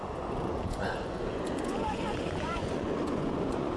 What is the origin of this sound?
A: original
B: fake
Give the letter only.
B